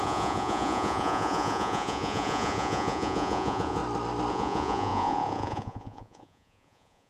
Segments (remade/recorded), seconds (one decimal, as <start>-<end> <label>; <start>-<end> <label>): 0.0-3.8 remade; 3.8-4.3 recorded; 4.3-7.1 remade